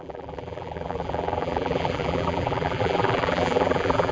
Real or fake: fake